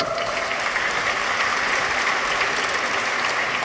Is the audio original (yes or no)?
yes